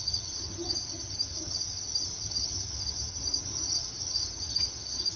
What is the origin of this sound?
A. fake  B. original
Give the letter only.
A